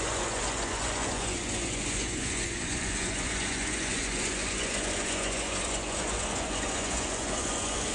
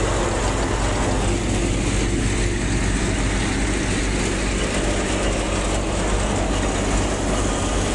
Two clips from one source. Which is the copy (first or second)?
first